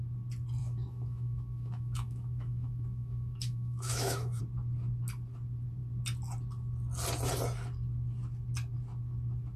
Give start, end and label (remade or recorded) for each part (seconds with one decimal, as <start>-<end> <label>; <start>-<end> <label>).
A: 0.0-0.6 recorded; 0.6-4.4 remade; 4.4-9.6 recorded